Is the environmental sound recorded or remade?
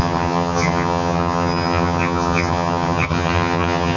remade